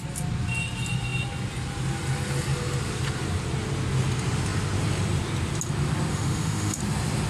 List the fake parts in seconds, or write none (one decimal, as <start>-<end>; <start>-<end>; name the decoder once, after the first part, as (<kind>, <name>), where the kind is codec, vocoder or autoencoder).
6.1-6.8 (autoencoder, DAC-VAE)